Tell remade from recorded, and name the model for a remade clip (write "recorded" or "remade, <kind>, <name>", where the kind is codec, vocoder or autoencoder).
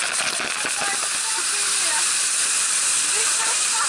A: recorded